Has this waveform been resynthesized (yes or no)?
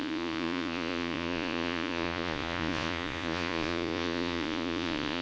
yes